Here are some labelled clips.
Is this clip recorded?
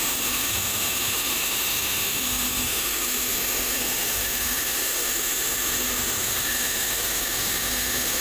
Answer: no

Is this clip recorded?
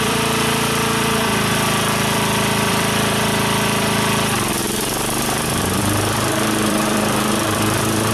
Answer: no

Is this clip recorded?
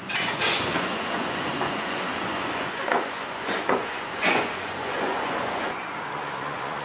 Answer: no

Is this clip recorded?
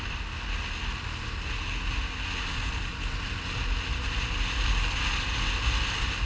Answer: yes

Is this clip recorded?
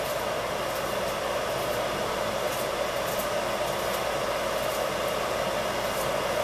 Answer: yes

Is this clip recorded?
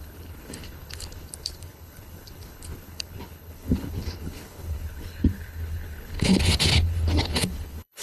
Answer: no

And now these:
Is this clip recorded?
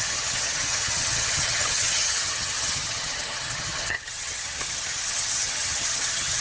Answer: no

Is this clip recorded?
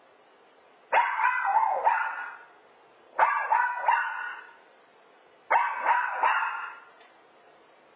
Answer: yes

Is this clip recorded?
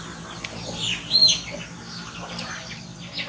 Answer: yes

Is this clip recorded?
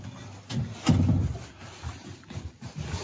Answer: yes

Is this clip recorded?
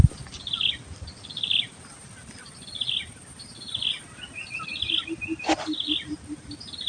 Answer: yes